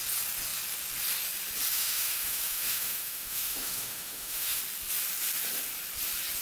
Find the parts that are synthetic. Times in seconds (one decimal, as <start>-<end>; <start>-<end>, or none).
1.7-4.6

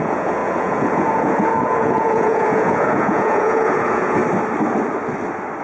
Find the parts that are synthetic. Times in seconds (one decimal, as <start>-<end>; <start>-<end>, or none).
0.0-4.2

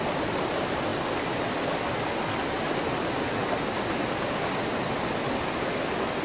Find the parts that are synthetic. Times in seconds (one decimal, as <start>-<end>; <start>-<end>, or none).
none

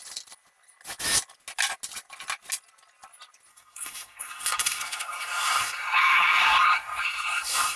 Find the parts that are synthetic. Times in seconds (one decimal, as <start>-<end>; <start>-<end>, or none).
3.5-7.8

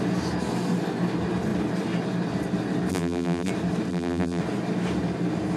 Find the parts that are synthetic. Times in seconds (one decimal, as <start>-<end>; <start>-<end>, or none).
2.9-3.5; 3.9-4.4

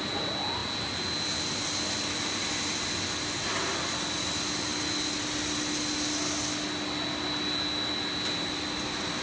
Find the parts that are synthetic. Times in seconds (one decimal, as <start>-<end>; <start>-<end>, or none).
none

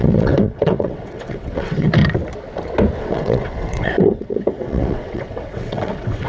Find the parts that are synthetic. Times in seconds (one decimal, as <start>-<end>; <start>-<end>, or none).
0.0-2.0; 3.0-6.3